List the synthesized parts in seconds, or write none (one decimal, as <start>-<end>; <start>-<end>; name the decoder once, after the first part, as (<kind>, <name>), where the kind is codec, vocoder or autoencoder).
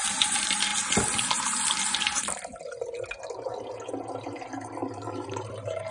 0.0-0.7 (vocoder, BigVGAN v2); 4.2-5.9